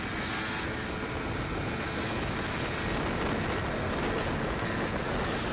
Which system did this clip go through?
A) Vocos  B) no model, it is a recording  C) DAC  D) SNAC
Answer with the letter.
B